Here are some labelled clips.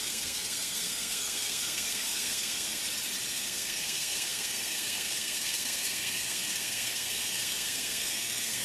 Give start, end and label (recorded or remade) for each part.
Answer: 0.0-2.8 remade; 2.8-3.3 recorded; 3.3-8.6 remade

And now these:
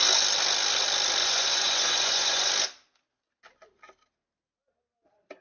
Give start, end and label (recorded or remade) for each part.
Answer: 0.0-1.2 recorded; 1.2-2.5 remade; 2.5-5.4 recorded

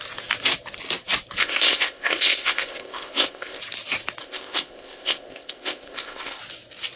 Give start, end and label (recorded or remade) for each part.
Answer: 0.0-1.4 recorded; 1.4-3.6 remade; 3.6-4.2 recorded; 4.2-6.4 remade; 6.4-7.0 recorded

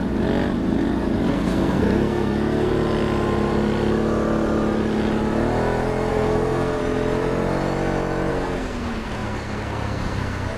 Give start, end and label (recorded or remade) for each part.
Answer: 0.0-1.3 recorded; 1.3-2.7 remade; 2.7-6.1 recorded; 6.1-6.8 remade; 6.8-8.3 recorded; 8.3-10.6 remade

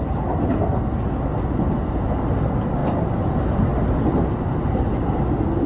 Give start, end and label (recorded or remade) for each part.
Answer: 0.0-5.7 recorded

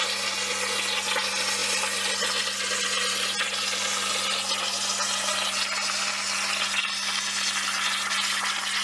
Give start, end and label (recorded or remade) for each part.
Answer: 0.0-8.8 recorded